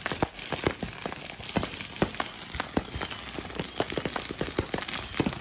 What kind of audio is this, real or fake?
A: real